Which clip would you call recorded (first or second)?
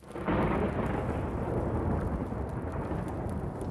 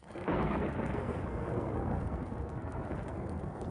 first